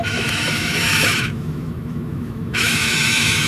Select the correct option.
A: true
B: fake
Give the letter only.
B